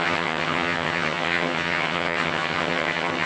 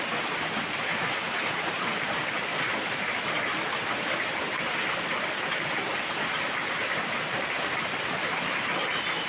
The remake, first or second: first